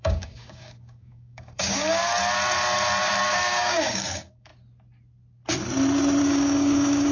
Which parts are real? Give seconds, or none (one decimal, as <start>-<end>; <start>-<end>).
2.1-3.3; 4.5-6.2

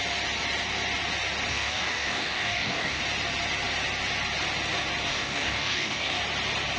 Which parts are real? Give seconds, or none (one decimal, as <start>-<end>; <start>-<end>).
0.0-1.5; 3.0-5.1; 6.2-6.8

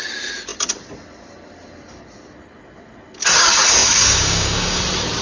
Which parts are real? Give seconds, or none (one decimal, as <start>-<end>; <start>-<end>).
0.0-3.8; 4.8-5.2

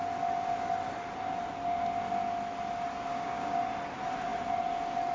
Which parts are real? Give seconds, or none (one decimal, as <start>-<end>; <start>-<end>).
0.0-3.1; 3.6-5.1

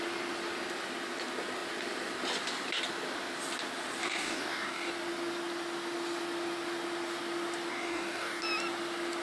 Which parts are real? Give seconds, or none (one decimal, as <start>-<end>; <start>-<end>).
0.0-4.0; 4.9-7.7; 8.4-9.2